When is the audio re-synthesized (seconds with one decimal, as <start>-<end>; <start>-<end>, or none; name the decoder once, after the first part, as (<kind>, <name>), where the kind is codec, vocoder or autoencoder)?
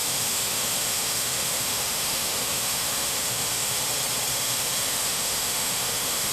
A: 0.0-3.8 (autoencoder, DAC-VAE); 4.3-6.3